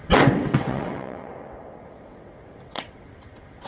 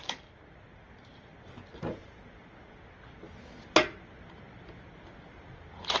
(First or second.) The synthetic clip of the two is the first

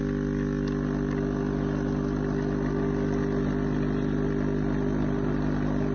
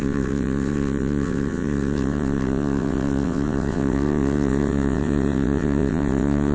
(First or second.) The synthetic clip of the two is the second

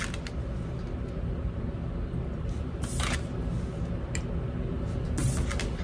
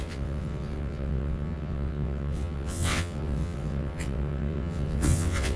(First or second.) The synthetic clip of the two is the second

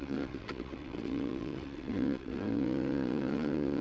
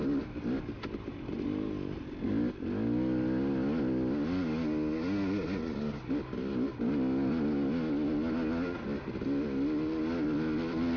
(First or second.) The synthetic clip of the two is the first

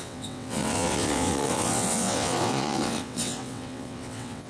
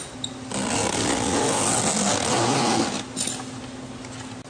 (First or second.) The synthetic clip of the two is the first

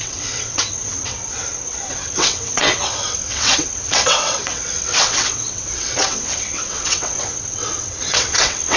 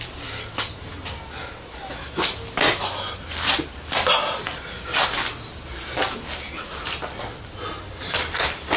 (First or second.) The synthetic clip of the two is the first